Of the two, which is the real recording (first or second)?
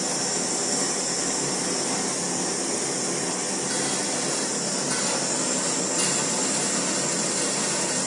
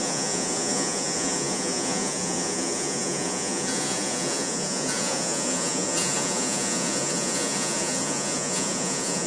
first